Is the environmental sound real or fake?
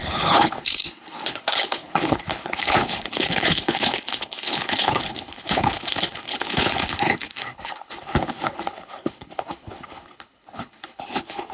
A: fake